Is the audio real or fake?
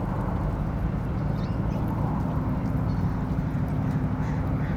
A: fake